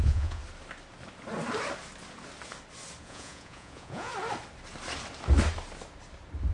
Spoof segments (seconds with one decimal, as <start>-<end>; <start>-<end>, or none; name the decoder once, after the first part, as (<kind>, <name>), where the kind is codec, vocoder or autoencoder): 0.0-0.4 (vocoder, Vocos); 3.0-4.1